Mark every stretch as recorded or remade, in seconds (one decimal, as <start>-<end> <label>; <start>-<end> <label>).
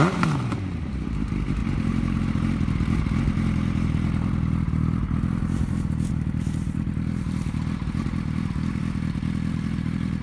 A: 0.0-8.8 remade; 8.8-9.5 recorded; 9.5-10.2 remade